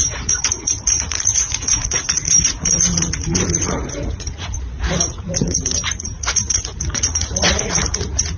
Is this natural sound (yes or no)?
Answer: no